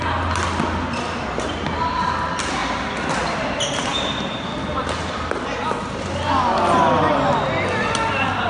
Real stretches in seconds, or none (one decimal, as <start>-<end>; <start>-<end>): 0.0-8.5